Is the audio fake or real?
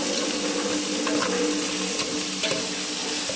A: real